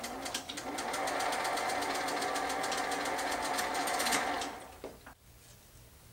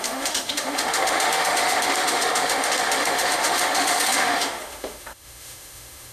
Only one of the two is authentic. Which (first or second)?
first